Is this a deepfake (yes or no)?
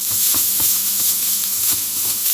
yes